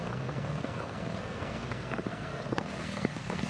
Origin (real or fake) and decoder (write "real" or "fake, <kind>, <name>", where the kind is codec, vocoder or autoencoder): fake, codec, SNAC